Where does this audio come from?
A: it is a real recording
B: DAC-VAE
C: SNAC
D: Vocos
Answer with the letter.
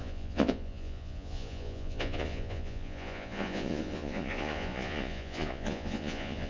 D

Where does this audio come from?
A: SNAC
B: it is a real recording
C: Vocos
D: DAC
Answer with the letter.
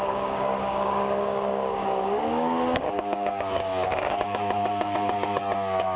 D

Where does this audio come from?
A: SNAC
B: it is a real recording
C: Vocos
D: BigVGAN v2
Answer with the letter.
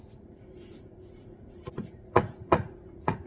C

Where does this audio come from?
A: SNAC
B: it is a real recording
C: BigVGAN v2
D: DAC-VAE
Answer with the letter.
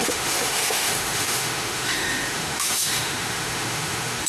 D